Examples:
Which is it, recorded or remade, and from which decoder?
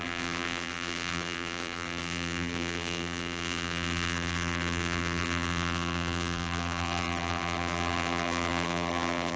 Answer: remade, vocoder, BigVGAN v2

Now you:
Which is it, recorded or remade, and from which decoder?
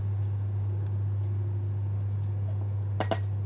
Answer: recorded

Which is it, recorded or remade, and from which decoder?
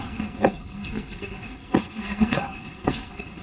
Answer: remade, codec, SNAC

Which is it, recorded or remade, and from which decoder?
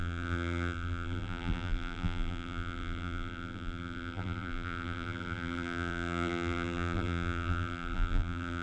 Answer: remade, vocoder, BigVGAN v2